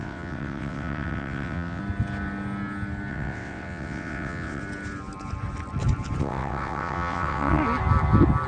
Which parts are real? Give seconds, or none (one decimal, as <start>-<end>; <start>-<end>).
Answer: 1.8-3.1; 4.6-6.2; 7.6-8.5